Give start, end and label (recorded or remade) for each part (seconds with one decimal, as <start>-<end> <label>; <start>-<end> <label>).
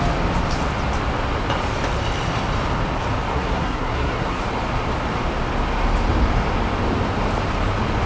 0.0-3.3 recorded; 3.3-4.4 remade; 4.4-8.1 recorded